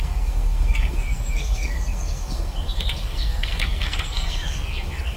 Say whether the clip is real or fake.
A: fake